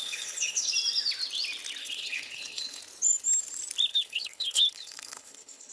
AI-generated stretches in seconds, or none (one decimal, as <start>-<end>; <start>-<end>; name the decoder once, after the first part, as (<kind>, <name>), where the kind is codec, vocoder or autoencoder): 0.0-0.7 (codec, HILCodec); 1.8-2.8; 3.9-5.7